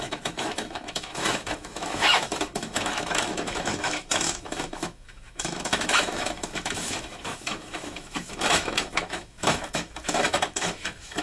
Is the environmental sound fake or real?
fake